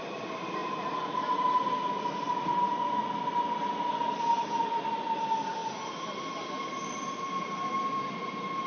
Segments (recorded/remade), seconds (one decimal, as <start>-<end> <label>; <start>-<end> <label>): 0.0-8.7 recorded